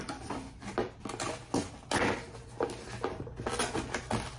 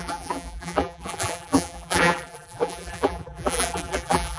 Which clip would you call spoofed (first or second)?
second